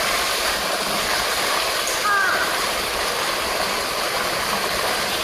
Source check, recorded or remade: recorded